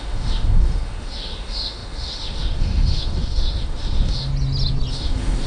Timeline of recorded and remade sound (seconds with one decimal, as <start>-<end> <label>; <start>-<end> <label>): 0.0-4.3 remade; 4.3-4.9 recorded; 4.9-5.5 remade